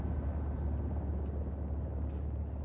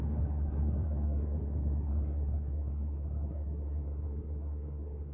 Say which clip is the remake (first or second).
second